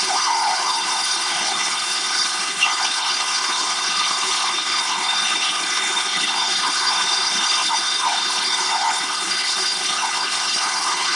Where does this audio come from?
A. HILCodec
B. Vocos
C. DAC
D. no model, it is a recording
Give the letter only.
A